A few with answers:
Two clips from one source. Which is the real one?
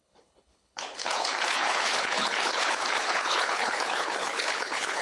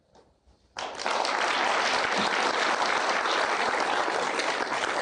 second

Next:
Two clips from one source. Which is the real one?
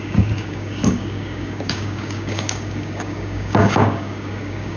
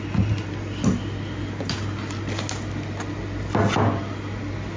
second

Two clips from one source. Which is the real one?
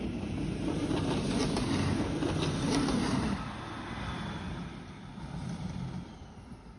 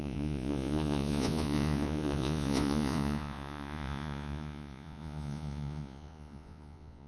first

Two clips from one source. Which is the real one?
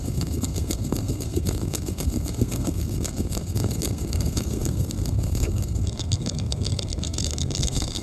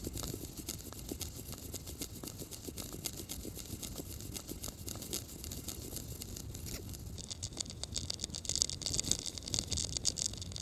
second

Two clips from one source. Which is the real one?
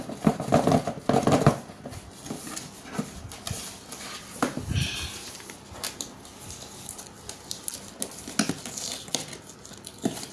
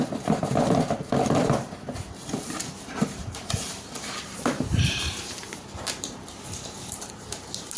first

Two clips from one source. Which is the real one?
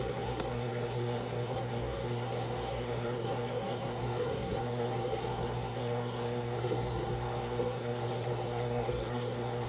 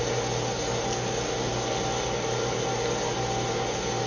second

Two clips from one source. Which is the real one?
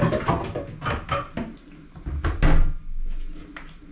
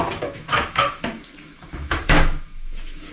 first